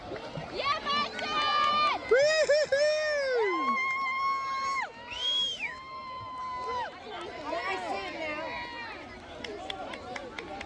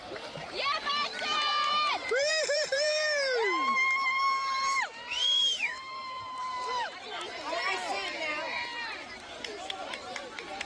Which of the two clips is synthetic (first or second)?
second